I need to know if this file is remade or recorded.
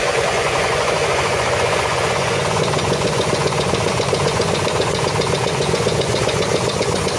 remade